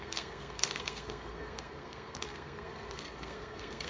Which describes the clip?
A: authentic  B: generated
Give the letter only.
B